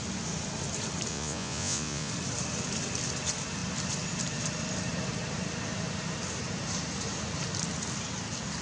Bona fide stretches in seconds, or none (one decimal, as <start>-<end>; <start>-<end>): 0.0-1.1; 2.1-8.6